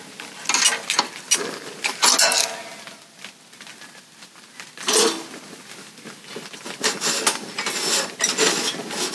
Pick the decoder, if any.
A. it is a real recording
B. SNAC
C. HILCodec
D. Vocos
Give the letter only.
A